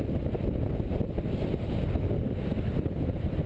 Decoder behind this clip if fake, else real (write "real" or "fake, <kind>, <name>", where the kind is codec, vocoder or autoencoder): real